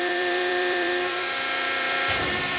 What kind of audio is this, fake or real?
fake